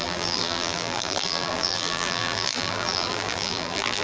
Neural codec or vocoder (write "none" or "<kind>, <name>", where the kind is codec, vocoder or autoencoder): vocoder, BigVGAN v2